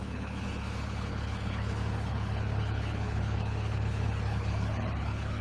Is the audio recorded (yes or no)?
no